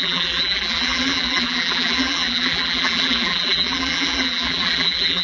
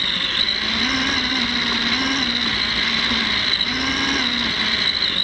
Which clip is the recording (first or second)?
second